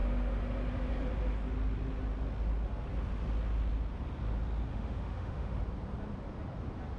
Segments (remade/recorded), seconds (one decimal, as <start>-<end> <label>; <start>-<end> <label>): 0.0-4.7 recorded; 4.7-5.6 remade; 5.6-7.0 recorded